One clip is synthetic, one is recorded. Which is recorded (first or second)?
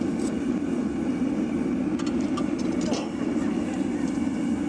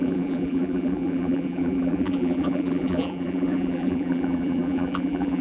first